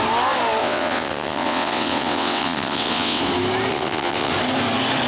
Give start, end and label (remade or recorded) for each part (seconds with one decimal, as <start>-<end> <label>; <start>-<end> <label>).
0.0-0.6 recorded; 0.6-3.2 remade; 3.2-3.7 recorded; 3.7-4.3 remade; 4.3-5.1 recorded